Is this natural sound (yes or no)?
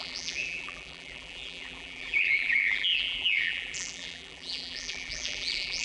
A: no